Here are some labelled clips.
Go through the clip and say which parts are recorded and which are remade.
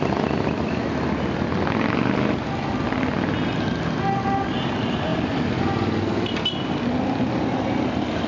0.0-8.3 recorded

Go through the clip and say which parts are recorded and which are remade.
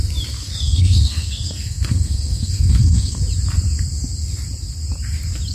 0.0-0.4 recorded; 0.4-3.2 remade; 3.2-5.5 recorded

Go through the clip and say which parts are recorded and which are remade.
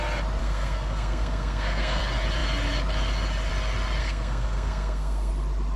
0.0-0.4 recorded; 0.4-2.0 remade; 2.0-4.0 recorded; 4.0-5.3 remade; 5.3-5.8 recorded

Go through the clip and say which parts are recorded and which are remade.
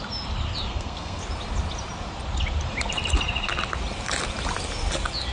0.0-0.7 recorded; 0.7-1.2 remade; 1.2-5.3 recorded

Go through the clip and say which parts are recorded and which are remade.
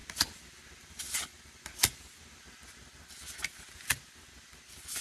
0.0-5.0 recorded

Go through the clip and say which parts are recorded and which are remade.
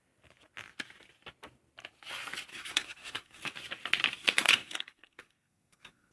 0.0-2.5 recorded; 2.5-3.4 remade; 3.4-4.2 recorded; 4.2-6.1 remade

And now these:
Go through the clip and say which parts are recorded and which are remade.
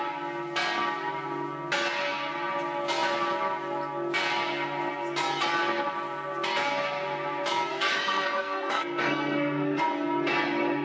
0.0-7.7 recorded; 7.7-9.8 remade; 9.8-10.8 recorded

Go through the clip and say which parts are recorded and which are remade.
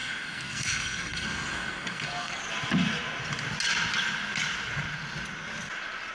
0.0-2.4 remade; 2.4-6.1 recorded